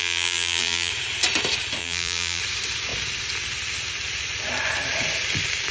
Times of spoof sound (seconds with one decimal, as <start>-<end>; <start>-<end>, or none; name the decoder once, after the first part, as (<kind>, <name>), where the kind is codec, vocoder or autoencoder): 0.0-0.9 (vocoder, BigVGAN v2); 1.8-2.4